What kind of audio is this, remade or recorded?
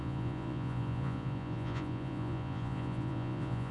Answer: remade